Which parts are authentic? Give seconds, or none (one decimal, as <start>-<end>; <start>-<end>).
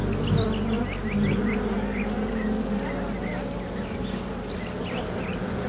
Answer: 0.0-5.7